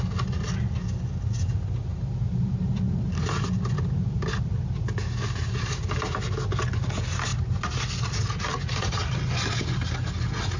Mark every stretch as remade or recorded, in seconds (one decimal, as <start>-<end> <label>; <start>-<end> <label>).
0.0-10.6 recorded

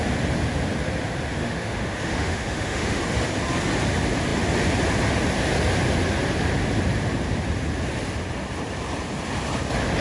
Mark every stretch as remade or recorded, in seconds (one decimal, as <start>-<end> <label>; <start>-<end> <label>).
0.0-1.4 recorded; 1.4-3.0 remade; 3.0-10.0 recorded

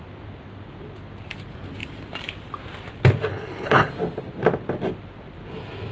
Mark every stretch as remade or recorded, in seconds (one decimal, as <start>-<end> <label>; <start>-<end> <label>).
0.0-3.3 recorded; 3.3-3.9 remade; 3.9-5.9 recorded

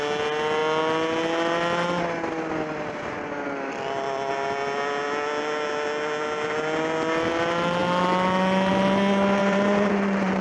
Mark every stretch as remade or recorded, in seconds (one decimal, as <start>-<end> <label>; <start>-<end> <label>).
0.0-9.4 recorded; 9.4-9.9 remade; 9.9-10.4 recorded